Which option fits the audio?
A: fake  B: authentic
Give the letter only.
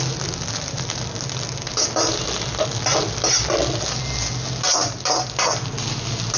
B